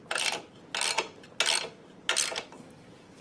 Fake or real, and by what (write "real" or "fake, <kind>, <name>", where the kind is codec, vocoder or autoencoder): real